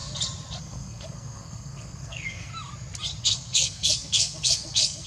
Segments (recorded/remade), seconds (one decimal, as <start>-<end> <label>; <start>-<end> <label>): 0.0-0.6 recorded; 0.6-2.5 remade; 2.5-3.2 recorded; 3.2-5.1 remade